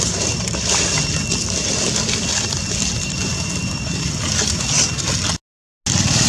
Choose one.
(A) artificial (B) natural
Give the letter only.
B